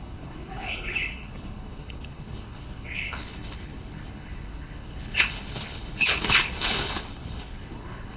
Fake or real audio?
fake